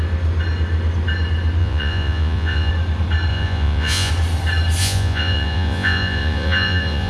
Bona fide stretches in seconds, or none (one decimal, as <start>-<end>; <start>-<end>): 0.0-1.6; 2.7-3.3; 4.1-4.8